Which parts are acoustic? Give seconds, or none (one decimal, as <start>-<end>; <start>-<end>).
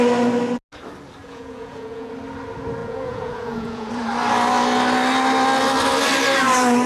0.0-1.2; 2.1-2.8; 3.9-6.9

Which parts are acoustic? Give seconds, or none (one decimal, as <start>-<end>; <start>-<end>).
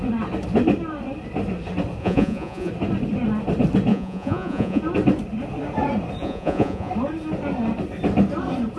0.0-2.0; 2.7-3.9; 4.8-6.2; 6.9-8.8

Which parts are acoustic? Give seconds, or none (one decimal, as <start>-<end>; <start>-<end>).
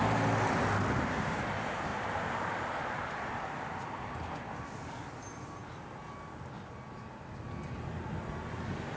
0.0-9.0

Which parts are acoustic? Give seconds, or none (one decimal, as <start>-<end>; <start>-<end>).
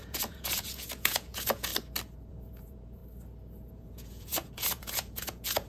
1.7-2.3; 3.0-3.7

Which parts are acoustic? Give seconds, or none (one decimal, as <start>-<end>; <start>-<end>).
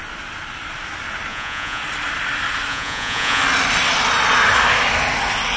0.0-1.3; 1.8-2.7; 3.4-5.6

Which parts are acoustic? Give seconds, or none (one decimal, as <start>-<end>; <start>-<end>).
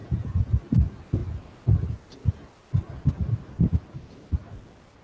0.5-5.0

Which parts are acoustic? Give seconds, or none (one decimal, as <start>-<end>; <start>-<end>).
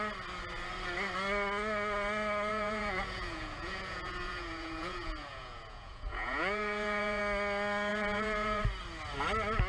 0.0-2.5; 7.2-7.9; 8.6-9.7